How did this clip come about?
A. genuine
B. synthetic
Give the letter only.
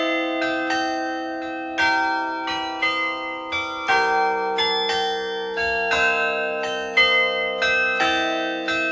A